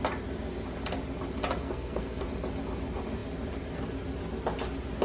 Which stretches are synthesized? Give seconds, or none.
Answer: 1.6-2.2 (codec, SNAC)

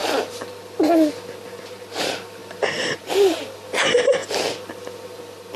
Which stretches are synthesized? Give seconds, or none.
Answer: 1.1-2.4 (vocoder, BigVGAN v2); 3.0-4.2; 4.7-5.6

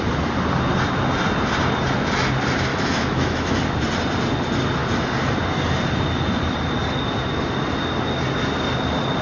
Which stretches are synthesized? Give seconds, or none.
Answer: 2.7-3.6 (autoencoder, DAC-VAE)